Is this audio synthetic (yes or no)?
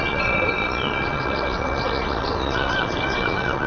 yes